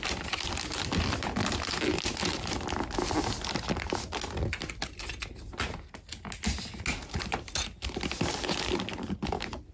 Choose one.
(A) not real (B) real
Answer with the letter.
B